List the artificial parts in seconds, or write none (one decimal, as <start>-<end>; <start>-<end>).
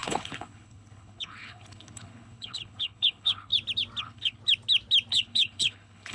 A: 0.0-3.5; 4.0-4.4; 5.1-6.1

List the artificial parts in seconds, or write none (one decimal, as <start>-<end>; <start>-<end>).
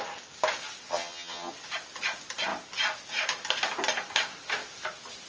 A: 0.9-1.5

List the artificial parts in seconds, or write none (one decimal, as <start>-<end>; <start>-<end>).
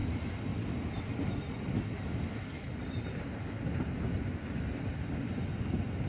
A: none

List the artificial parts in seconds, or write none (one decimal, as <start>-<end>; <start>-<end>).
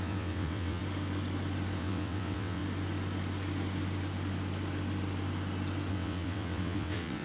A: 0.0-0.8; 1.8-2.6; 5.9-7.2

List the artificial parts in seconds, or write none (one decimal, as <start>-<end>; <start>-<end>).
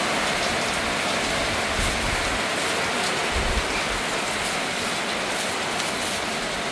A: none